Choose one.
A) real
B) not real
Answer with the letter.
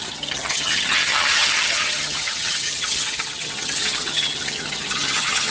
B